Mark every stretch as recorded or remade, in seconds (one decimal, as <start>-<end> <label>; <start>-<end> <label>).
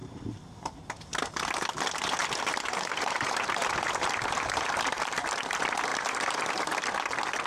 0.0-1.8 remade; 1.8-2.2 recorded; 2.2-5.2 remade; 5.2-5.9 recorded; 5.9-6.5 remade; 6.5-7.5 recorded